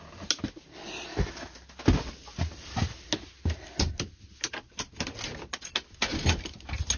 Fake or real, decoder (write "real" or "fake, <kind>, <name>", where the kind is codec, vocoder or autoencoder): real